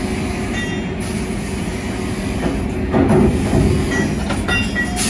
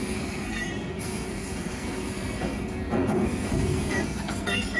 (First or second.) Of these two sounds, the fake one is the second